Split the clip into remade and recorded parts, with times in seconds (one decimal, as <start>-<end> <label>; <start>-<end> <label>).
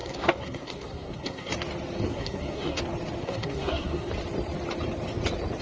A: 0.0-1.5 remade; 1.5-2.1 recorded; 2.1-2.8 remade; 2.8-3.2 recorded; 3.2-4.1 remade; 4.1-5.6 recorded